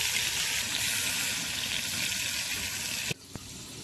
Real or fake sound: real